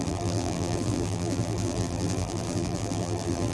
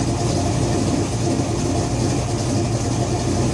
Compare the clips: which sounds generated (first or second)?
first